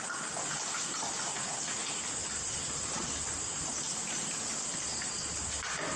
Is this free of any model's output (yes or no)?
yes